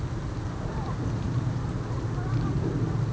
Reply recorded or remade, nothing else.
recorded